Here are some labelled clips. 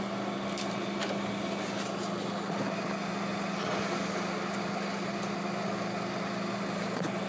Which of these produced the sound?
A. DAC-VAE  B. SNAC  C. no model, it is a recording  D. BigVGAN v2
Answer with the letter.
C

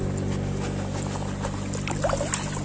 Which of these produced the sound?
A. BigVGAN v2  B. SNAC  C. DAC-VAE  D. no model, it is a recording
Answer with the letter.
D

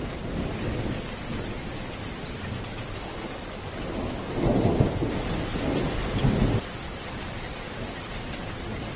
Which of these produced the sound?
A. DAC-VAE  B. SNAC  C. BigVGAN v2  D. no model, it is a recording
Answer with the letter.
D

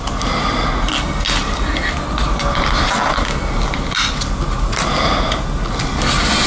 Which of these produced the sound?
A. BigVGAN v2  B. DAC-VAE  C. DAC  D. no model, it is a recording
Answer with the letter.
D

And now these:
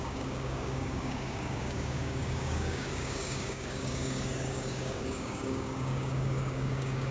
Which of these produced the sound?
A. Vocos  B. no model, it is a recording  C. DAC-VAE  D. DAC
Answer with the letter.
D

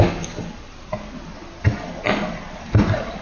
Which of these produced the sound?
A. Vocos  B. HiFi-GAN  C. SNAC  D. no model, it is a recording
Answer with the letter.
D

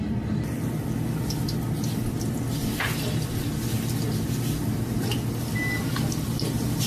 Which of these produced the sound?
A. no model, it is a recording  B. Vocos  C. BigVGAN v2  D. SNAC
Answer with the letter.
A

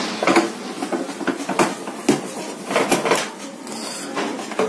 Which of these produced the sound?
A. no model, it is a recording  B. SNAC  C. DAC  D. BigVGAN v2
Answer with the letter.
A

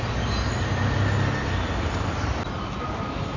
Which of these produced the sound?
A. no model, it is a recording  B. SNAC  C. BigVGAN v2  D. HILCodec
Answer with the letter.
A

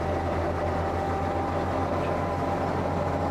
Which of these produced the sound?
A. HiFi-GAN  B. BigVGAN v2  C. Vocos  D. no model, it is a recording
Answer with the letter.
D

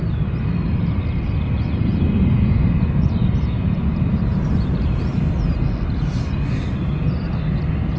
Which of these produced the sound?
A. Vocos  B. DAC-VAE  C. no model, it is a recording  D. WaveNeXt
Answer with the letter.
C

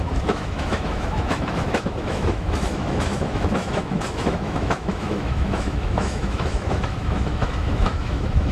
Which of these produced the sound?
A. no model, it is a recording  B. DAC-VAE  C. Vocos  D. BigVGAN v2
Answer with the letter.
B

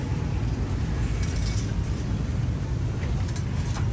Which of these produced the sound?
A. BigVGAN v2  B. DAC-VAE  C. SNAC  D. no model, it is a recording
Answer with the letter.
D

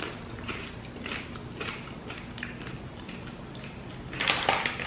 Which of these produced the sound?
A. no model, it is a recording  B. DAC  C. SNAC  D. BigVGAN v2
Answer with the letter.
A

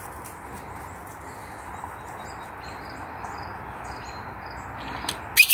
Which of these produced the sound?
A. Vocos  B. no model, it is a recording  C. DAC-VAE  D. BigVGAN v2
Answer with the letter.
B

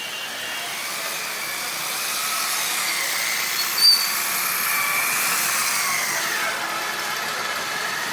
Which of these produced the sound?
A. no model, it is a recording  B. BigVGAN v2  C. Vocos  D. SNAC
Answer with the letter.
A